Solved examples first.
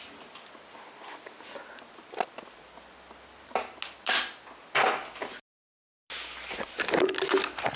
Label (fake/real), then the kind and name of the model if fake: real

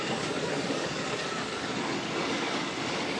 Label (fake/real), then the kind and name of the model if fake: fake, codec, DAC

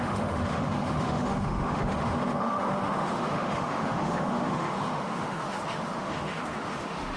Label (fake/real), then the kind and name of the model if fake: fake, autoencoder, DAC-VAE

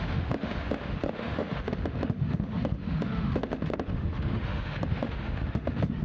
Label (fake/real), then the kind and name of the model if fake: fake, autoencoder, DAC-VAE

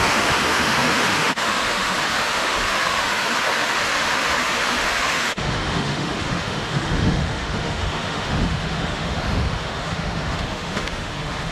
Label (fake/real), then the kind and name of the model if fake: fake, autoencoder, DAC-VAE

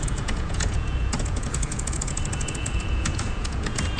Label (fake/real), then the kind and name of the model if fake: fake, vocoder, Vocos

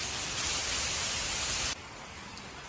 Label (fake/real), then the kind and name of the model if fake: real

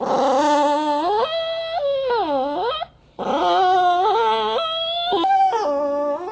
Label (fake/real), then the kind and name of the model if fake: real